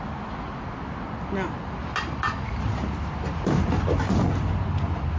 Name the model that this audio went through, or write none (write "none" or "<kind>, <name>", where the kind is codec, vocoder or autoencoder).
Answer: none